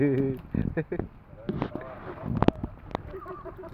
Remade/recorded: recorded